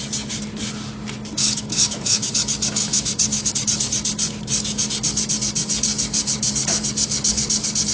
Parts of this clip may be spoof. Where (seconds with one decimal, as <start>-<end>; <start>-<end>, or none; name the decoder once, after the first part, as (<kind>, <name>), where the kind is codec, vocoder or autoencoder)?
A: 1.4-2.3 (autoencoder, DAC-VAE); 2.8-3.5